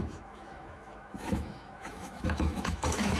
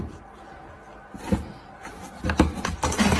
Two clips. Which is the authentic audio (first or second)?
second